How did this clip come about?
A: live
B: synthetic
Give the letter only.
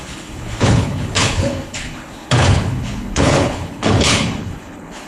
B